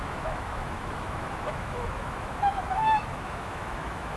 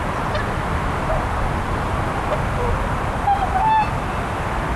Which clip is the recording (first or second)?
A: second